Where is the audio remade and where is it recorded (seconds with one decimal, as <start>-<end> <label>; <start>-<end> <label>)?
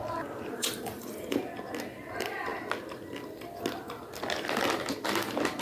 0.0-0.5 recorded; 0.5-1.4 remade; 1.4-5.6 recorded